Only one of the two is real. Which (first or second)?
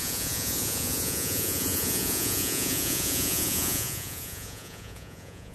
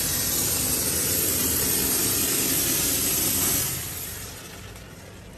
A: second